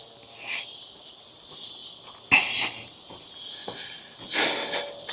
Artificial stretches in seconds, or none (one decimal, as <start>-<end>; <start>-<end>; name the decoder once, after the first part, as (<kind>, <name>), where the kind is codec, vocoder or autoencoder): none